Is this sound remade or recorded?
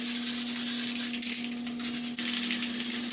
recorded